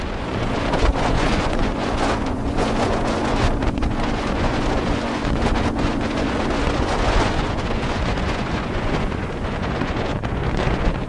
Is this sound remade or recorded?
remade